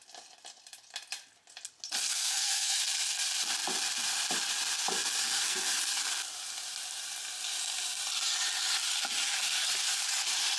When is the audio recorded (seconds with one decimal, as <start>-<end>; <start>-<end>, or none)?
0.0-2.1; 2.8-5.2; 5.8-10.6